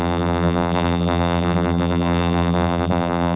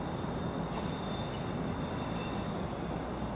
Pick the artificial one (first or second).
first